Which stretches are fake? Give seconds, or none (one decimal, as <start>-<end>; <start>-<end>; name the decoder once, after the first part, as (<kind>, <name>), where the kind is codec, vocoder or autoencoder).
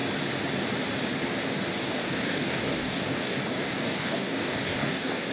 1.8-5.3 (codec, DAC)